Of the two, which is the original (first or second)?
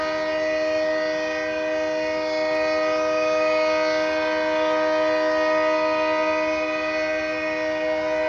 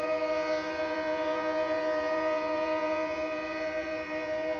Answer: first